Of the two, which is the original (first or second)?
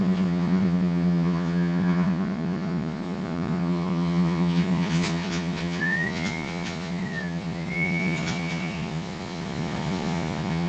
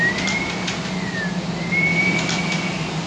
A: second